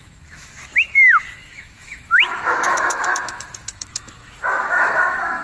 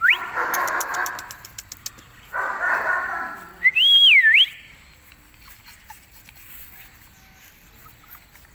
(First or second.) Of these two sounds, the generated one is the first